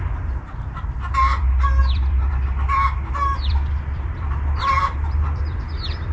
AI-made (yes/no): yes